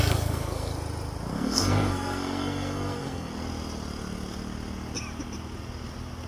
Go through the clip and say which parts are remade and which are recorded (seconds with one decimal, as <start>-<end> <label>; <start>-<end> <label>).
0.0-0.7 remade; 0.7-1.3 recorded; 1.3-3.3 remade; 3.3-6.3 recorded